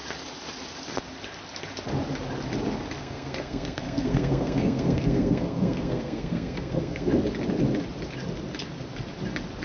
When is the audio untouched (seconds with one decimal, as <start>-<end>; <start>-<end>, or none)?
0.0-3.0; 7.1-9.6